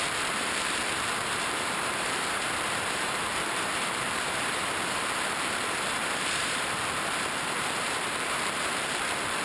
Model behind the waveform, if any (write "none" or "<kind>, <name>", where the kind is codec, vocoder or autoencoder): vocoder, BigVGAN v2